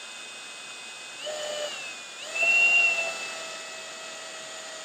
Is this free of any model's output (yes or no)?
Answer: yes